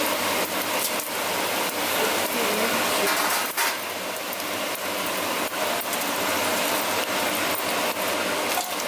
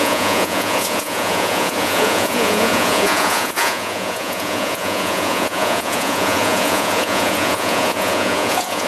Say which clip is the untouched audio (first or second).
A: first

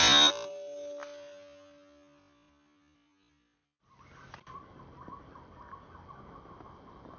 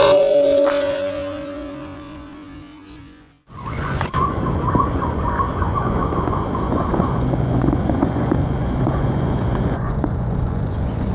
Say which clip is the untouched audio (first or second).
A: first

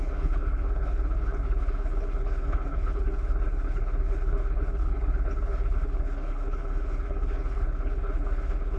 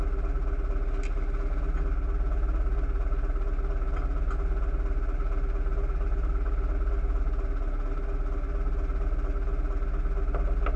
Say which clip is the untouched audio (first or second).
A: second